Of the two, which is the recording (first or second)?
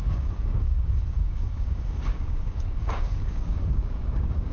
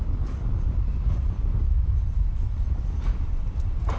second